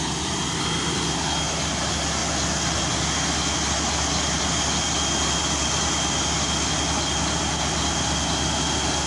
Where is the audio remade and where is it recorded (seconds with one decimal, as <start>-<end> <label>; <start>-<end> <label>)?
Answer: 0.0-9.1 recorded